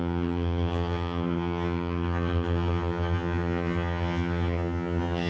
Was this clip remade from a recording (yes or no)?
yes